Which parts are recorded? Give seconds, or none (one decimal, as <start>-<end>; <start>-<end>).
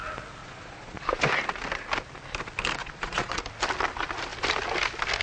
0.0-0.4; 1.1-2.8; 3.4-5.2